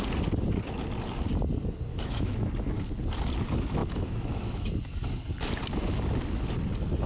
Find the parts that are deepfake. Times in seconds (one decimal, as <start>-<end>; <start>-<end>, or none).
1.9-2.5; 3.8-4.7